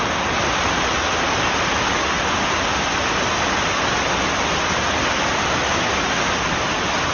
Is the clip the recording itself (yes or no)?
yes